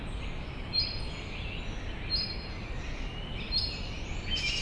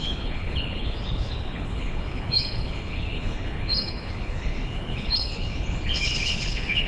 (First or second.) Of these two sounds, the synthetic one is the second